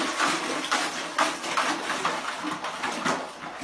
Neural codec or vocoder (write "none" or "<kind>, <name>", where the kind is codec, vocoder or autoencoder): none